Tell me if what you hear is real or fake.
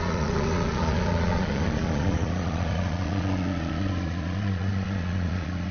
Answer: fake